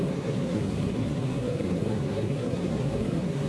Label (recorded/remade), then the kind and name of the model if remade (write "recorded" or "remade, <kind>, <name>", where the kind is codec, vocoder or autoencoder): remade, codec, SNAC